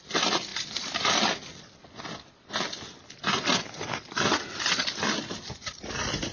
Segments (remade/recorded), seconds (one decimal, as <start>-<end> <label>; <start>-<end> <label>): 0.0-6.3 recorded